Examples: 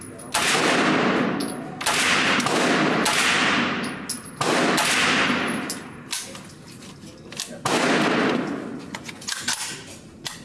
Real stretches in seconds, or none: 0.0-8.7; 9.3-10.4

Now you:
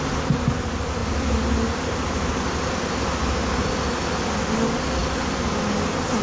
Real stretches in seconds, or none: 0.0-6.2

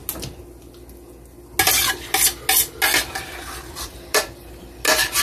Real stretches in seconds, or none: 0.0-3.0